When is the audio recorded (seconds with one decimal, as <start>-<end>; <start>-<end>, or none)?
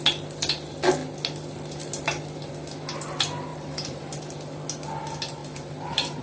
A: 0.0-3.5; 4.1-5.4